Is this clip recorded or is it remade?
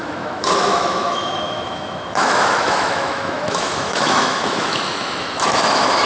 remade